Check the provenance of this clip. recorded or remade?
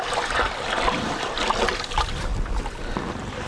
recorded